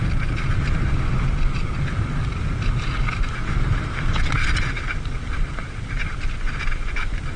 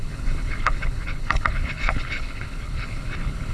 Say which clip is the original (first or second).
first